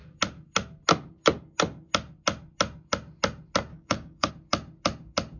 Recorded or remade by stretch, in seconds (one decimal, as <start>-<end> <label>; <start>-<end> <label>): 0.0-3.7 recorded; 3.7-4.3 remade; 4.3-5.4 recorded